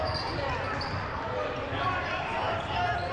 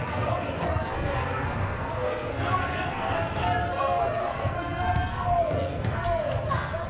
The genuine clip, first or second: first